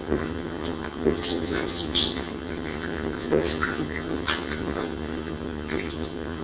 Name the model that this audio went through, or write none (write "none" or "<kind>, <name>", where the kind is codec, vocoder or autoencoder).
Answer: vocoder, HiFi-GAN